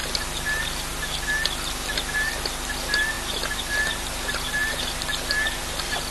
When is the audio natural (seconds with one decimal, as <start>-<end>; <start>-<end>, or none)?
0.0-6.1